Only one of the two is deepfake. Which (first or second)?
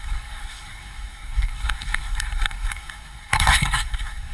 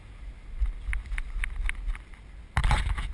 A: first